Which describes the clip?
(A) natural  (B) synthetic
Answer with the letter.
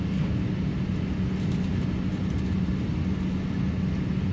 A